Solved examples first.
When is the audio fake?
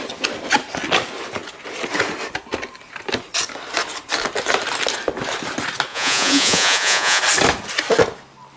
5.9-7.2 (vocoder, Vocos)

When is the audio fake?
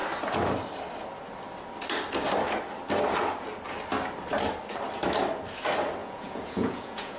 6.0-7.2 (vocoder, Vocos)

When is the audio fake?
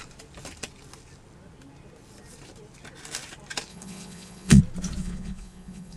3.7-4.6 (vocoder, Vocos); 5.0-6.0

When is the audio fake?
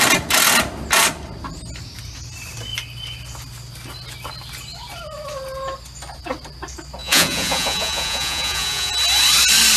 7.0-8.9 (vocoder, Vocos)